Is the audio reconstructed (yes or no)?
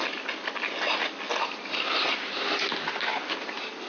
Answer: no